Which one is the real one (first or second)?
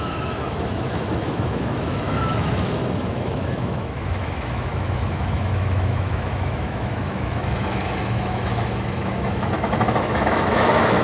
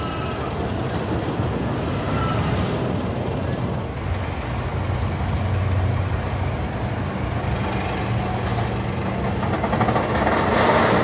second